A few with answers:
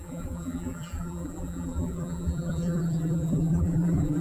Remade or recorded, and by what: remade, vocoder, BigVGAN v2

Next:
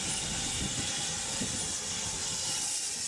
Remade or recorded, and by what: recorded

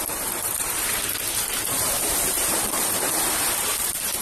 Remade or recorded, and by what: remade, vocoder, BigVGAN v2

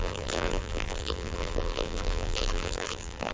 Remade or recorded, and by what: remade, vocoder, BigVGAN v2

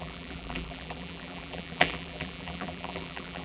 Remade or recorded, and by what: remade, vocoder, BigVGAN v2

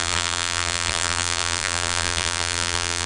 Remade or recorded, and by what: remade, vocoder, BigVGAN v2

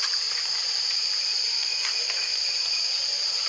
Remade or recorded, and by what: remade, vocoder, BigVGAN v2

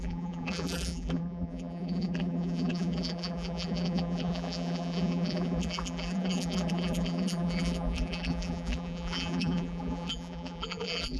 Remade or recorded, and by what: remade, vocoder, BigVGAN v2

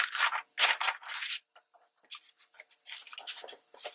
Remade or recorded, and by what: recorded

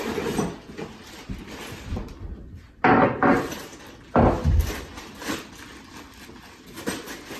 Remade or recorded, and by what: recorded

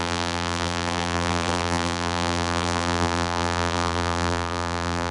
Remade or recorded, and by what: remade, vocoder, BigVGAN v2